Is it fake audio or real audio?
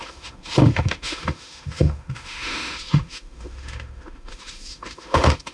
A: fake